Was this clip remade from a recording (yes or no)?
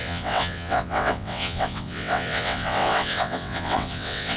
yes